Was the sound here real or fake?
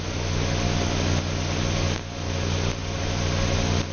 real